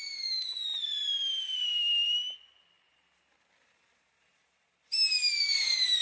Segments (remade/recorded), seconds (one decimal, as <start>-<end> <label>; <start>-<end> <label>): 0.0-2.2 remade; 2.2-5.1 recorded; 5.1-6.0 remade